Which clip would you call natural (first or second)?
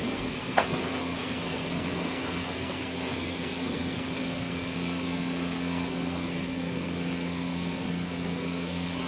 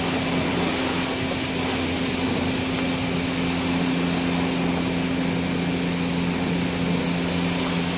second